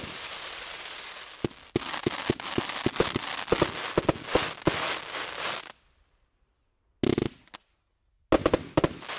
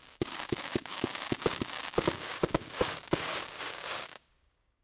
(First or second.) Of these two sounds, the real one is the first